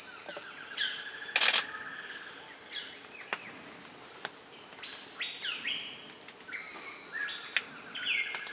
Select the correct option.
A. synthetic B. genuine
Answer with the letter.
B